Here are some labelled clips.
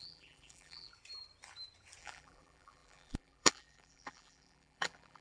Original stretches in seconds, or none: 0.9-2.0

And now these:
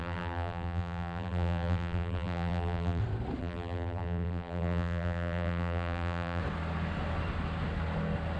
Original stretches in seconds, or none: 3.0-3.4; 6.4-8.4

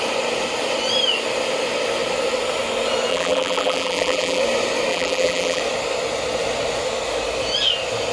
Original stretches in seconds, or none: 0.0-3.1; 4.4-4.9; 5.6-8.1

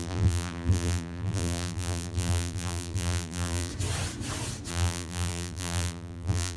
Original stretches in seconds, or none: 3.7-4.7